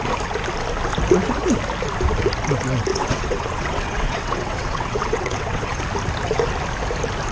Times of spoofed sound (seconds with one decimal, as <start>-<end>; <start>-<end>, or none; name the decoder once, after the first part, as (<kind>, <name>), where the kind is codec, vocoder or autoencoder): 2.9-5.8 (vocoder, WaveNeXt)